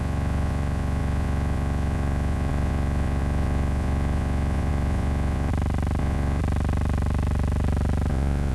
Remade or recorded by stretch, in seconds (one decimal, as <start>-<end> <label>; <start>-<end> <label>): 0.0-5.5 remade; 5.5-6.0 recorded; 6.0-6.4 remade; 6.4-8.1 recorded; 8.1-8.5 remade